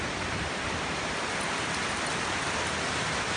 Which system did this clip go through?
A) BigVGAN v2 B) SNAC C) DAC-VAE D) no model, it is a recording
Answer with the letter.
D